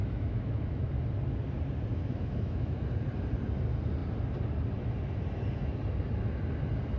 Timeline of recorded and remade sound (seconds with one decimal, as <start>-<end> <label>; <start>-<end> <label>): 0.0-0.9 remade; 0.9-1.9 recorded; 1.9-2.8 remade; 2.8-7.0 recorded